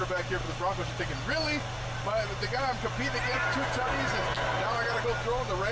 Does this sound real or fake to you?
real